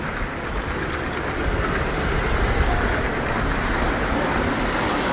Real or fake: real